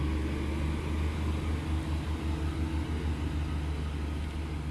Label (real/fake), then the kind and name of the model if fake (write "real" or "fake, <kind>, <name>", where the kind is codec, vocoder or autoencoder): real